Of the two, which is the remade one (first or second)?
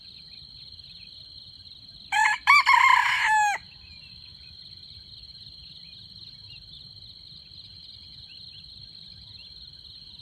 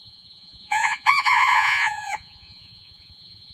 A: second